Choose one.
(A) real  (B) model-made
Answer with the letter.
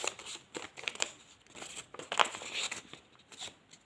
A